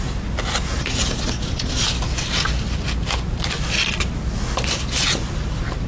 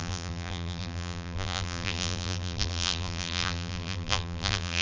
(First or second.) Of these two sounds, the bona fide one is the first